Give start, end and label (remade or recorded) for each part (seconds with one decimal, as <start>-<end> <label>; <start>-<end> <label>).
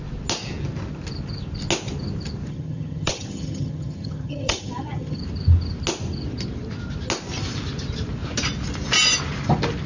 0.0-2.5 recorded; 2.5-5.2 remade; 5.2-9.9 recorded